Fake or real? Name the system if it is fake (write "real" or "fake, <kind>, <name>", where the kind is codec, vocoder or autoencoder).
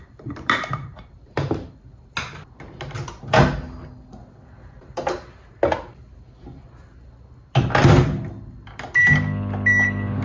real